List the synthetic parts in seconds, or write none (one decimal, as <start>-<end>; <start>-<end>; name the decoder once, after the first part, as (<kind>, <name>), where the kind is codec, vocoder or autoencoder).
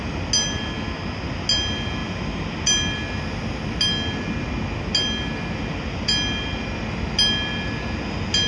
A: none